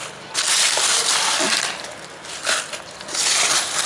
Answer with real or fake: real